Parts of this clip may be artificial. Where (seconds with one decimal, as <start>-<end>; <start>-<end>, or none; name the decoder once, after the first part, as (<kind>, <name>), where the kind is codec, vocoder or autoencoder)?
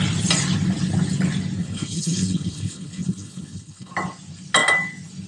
1.6-3.9 (codec, HILCodec)